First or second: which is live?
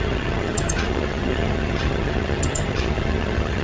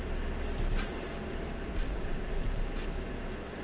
second